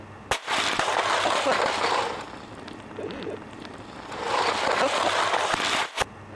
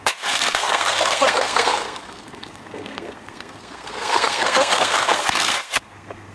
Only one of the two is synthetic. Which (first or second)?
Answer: second